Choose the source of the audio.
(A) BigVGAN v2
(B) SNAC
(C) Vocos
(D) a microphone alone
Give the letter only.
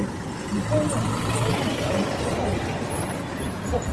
D